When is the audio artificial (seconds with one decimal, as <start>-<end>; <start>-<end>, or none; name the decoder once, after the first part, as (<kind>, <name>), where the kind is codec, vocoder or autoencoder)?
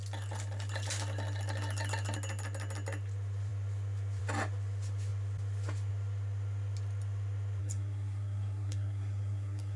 7.6-9.8 (codec, SNAC)